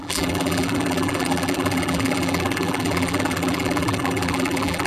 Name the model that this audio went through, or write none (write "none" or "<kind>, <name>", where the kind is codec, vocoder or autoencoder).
vocoder, BigVGAN v2